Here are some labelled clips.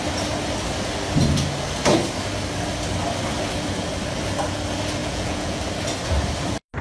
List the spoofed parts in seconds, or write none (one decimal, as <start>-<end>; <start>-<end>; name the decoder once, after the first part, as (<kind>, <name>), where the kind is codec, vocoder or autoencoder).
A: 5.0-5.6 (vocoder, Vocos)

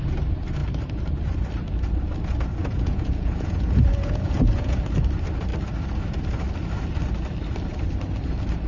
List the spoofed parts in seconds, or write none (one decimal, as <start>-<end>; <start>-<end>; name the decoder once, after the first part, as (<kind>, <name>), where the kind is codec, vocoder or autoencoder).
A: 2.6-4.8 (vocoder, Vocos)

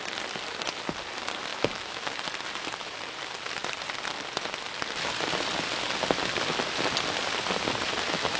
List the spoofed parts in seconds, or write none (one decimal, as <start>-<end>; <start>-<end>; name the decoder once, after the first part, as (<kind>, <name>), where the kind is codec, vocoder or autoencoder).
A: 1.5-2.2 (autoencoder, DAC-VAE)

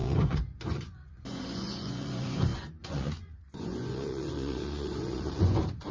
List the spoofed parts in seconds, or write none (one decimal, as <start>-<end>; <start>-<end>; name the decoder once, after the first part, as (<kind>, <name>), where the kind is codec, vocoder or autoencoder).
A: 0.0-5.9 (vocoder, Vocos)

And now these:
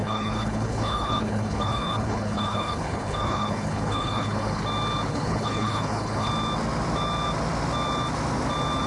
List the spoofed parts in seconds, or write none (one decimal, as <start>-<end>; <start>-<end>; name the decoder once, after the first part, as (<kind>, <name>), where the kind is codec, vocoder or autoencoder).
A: 0.0-4.6 (codec, HILCodec); 5.1-6.3

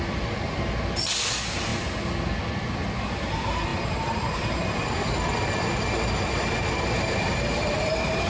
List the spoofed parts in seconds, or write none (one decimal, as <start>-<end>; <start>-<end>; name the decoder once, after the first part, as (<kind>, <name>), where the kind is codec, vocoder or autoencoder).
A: none

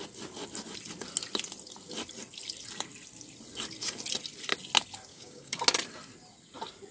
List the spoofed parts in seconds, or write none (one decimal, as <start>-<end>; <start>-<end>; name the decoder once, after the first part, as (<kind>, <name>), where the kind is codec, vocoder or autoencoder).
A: 5.1-5.6 (codec, DAC)